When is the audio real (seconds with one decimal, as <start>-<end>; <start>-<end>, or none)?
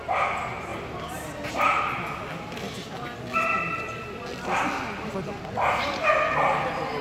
0.0-7.0